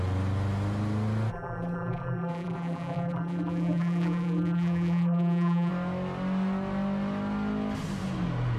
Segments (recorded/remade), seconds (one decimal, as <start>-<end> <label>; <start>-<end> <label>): 0.0-1.3 recorded; 1.3-5.7 remade; 5.7-8.6 recorded